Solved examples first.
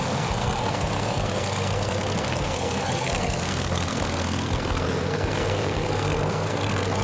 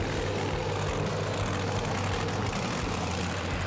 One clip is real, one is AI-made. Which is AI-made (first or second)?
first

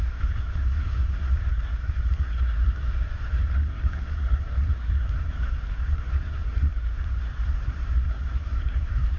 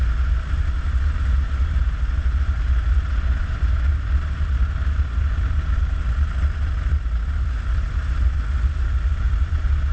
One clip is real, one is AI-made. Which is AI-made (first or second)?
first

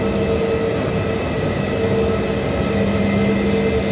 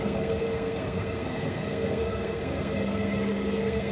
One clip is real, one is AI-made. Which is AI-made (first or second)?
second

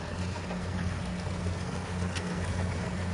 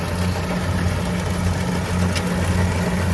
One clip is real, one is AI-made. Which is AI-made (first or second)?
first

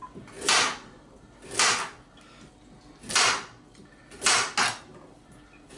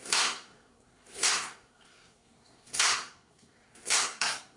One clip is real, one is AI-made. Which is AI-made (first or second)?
second